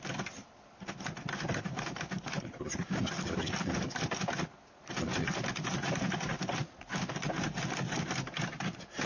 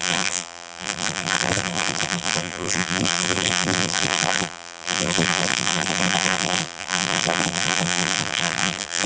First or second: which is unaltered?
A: first